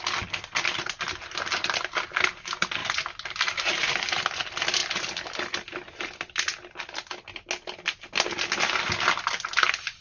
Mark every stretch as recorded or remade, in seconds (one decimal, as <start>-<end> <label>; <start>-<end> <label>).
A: 0.0-10.0 recorded